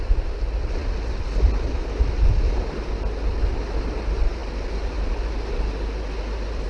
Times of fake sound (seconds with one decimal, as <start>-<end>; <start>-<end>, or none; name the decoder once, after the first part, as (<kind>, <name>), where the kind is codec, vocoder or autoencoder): none